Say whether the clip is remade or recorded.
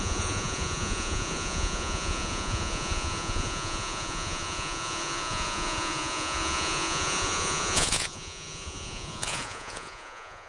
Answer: remade